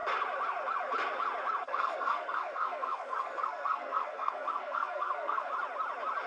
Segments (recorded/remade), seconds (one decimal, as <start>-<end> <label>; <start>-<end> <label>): 0.0-1.7 recorded; 1.7-5.5 remade; 5.5-6.3 recorded